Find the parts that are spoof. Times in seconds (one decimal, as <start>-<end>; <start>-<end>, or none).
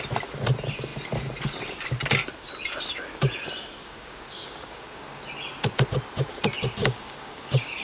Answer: 3.8-5.2; 6.8-7.8